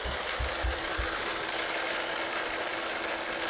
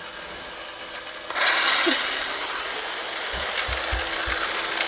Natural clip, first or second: second